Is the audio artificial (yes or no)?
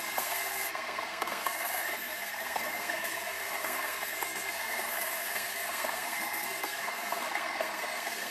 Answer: yes